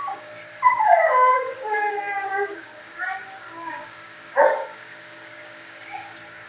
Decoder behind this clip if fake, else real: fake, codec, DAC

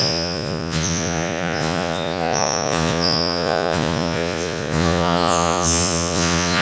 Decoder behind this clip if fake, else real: fake, vocoder, Vocos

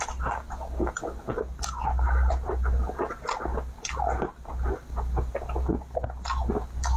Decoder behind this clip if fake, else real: real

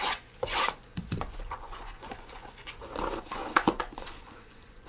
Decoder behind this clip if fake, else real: fake, vocoder, Vocos